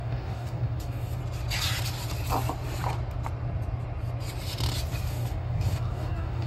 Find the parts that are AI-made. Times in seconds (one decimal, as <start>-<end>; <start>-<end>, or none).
0.0-1.2; 5.1-6.5